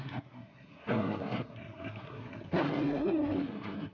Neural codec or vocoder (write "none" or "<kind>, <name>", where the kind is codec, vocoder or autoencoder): codec, SNAC